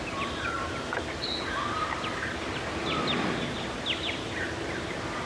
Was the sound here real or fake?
real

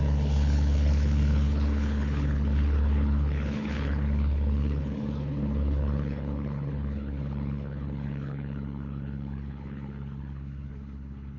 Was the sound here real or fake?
fake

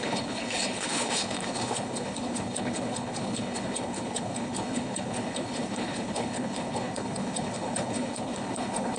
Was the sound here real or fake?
fake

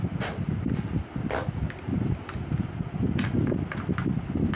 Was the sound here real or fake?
real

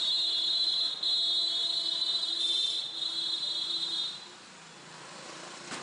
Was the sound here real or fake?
real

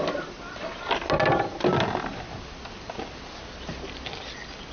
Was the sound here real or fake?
real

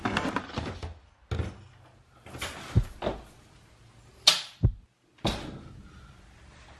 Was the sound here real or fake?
real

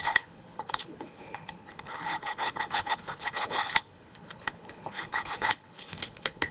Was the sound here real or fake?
fake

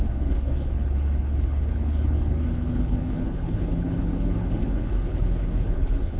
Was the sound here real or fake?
fake